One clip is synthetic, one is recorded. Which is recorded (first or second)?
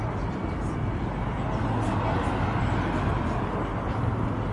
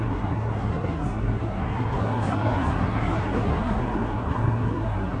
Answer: first